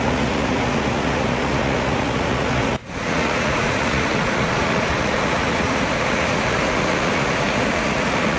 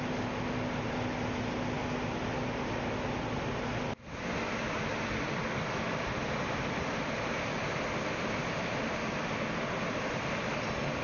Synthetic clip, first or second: first